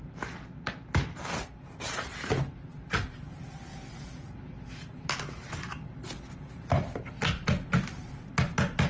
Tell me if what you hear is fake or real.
real